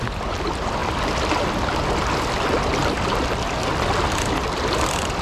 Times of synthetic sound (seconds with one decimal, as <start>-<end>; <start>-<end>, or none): none

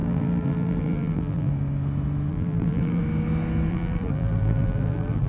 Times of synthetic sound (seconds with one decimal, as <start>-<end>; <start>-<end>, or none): 0.0-1.5; 2.3-3.0; 3.7-5.3

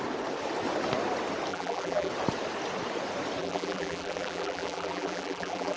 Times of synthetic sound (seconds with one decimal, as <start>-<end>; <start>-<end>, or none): 1.5-2.1; 3.4-5.8

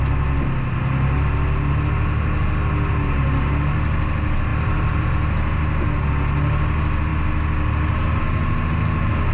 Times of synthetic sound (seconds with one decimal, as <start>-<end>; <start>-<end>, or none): 4.5-5.1

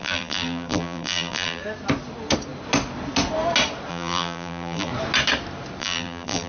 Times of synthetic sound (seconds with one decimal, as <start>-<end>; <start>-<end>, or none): 0.0-1.6; 3.9-4.9; 5.8-6.5

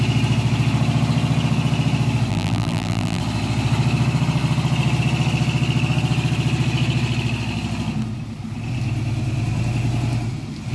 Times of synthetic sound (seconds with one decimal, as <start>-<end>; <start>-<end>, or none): 2.3-3.2